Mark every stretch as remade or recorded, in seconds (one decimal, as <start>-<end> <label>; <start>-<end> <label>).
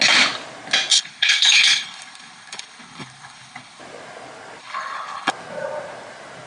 0.0-0.9 recorded; 0.9-3.8 remade; 3.8-4.6 recorded; 4.6-5.3 remade; 5.3-6.5 recorded